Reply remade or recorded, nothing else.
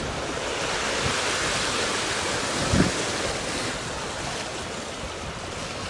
recorded